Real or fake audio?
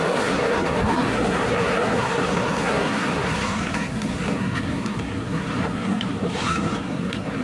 fake